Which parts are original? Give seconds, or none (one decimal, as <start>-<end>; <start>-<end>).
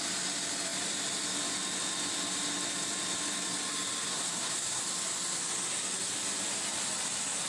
0.0-4.0; 4.8-7.5